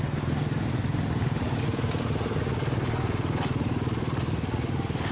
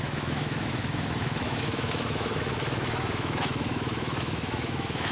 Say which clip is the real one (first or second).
first